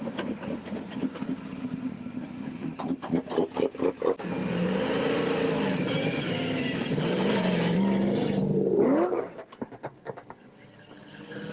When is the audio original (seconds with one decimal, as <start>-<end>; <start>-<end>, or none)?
0.0-4.4; 8.4-11.5